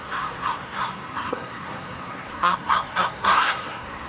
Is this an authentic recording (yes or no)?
no